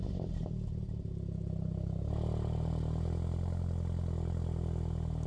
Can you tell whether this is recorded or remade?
recorded